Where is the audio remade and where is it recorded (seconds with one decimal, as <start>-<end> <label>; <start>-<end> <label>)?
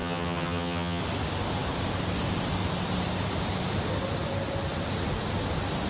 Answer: 0.0-1.0 remade; 1.0-5.9 recorded